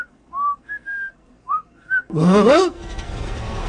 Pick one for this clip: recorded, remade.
remade